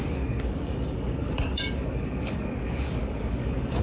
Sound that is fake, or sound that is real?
fake